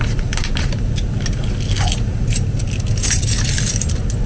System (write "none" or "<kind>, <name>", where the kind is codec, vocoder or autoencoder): none